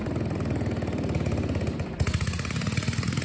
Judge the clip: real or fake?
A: real